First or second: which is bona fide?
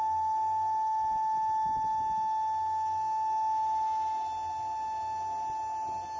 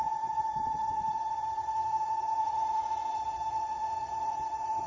first